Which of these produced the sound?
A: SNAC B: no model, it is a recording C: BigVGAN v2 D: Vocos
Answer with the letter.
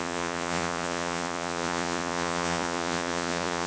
D